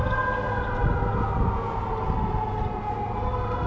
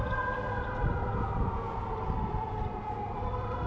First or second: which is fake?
second